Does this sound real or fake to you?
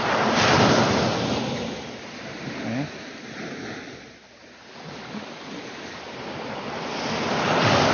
real